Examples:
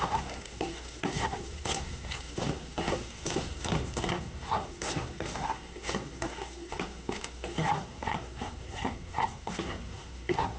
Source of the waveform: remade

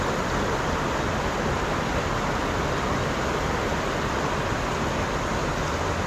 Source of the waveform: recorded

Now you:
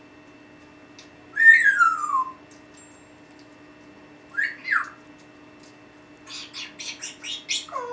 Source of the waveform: recorded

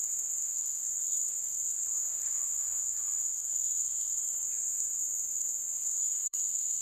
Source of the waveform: remade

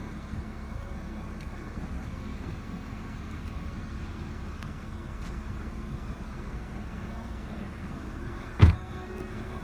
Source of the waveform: remade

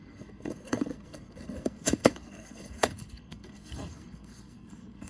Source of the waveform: remade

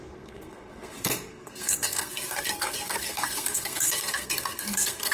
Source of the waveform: remade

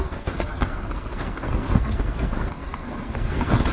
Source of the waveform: remade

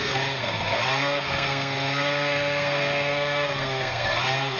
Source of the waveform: remade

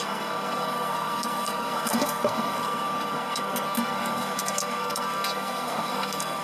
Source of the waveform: remade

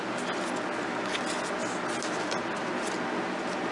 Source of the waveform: recorded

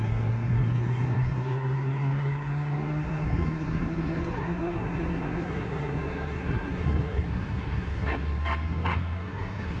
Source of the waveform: remade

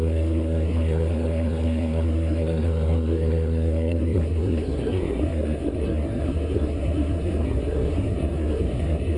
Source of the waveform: remade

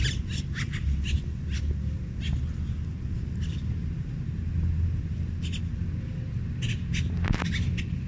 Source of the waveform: recorded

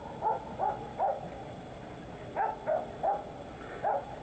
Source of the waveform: recorded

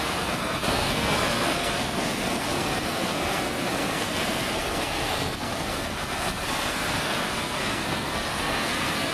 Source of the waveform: remade